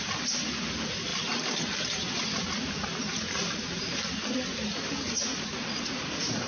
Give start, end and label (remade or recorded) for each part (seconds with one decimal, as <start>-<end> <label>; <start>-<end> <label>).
0.0-5.3 recorded; 5.3-6.5 remade